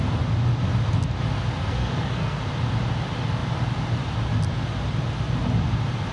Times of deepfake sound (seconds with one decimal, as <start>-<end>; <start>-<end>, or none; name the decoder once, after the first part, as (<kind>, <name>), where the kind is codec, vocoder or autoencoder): 1.7-2.4 (codec, SNAC)